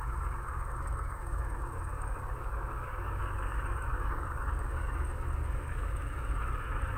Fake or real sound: fake